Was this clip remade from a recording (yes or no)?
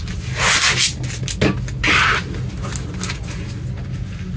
no